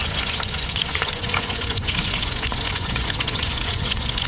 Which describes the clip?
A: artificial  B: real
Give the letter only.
A